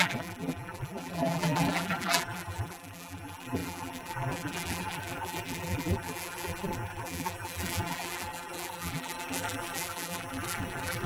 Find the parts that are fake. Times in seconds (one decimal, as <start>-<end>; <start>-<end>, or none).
0.0-11.1